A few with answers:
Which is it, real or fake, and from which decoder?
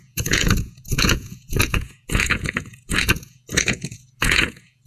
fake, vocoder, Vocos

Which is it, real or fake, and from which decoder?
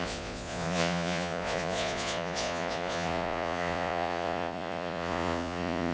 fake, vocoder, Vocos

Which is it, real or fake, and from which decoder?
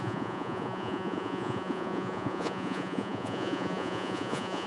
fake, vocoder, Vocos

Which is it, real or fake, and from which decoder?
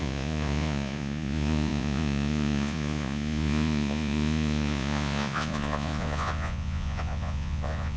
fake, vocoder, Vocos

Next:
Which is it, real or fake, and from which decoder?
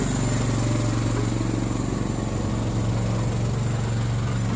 real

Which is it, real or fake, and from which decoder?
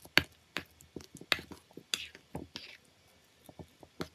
real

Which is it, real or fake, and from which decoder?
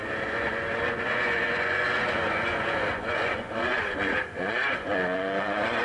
fake, vocoder, Vocos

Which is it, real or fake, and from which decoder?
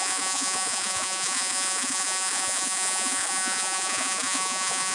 fake, vocoder, Vocos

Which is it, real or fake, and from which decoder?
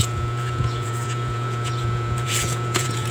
fake, vocoder, Vocos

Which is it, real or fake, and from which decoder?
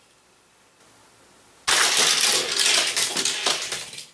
real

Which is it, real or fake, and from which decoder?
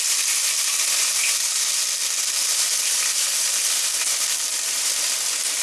real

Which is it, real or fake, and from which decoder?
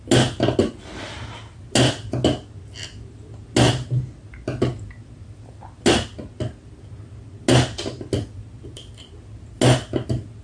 real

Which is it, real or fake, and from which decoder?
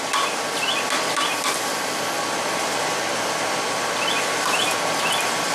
real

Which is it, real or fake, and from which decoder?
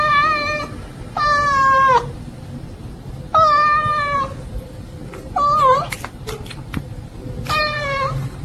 real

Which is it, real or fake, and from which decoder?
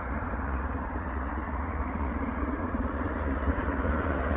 fake, vocoder, Vocos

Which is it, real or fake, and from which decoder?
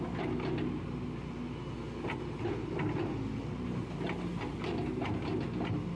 real